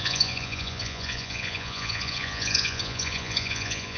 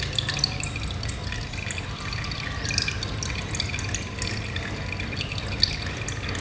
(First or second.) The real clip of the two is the second